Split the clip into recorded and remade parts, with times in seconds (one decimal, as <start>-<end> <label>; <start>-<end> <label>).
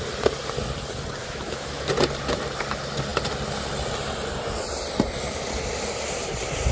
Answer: 0.0-1.2 recorded; 1.2-1.9 remade; 1.9-6.7 recorded